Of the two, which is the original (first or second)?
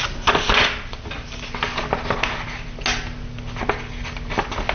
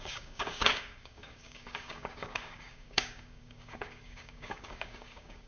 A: first